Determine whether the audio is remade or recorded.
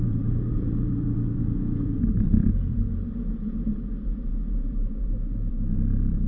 remade